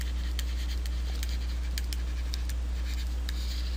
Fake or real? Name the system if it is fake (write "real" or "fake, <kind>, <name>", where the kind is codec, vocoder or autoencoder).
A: real